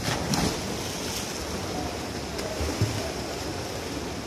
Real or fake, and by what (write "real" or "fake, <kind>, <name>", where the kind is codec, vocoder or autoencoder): real